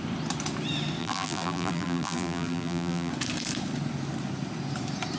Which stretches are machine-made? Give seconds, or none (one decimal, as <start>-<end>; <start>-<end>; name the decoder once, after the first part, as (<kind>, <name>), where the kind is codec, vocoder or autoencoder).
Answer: 1.0-3.1 (vocoder, BigVGAN v2)